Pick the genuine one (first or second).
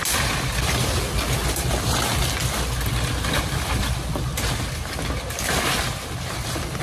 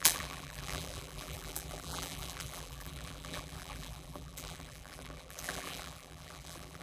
first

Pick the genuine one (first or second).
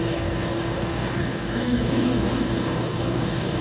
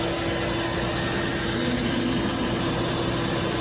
second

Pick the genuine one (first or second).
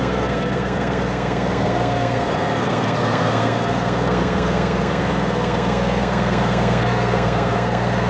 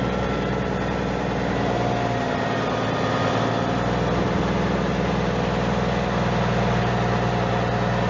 second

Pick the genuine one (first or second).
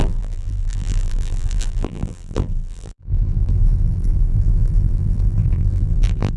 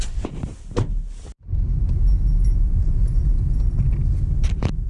second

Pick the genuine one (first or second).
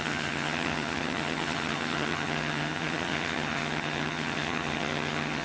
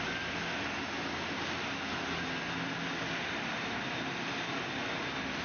second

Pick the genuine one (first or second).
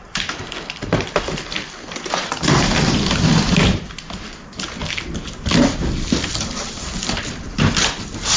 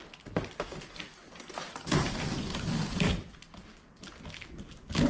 second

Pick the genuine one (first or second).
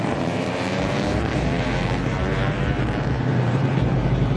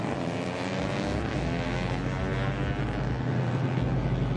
second